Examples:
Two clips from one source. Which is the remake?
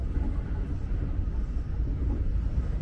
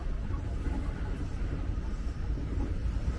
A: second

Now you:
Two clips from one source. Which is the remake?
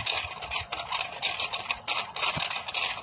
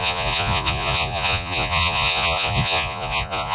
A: second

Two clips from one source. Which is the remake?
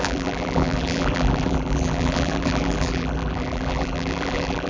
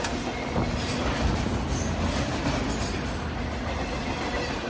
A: first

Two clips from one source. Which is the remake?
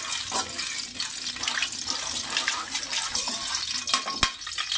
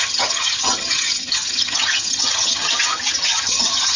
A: second